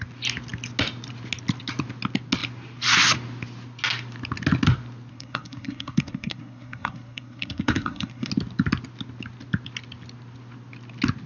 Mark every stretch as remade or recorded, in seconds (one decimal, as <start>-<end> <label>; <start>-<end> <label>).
0.0-5.1 recorded; 5.1-8.3 remade; 8.3-11.3 recorded